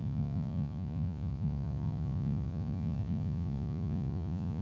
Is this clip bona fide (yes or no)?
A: no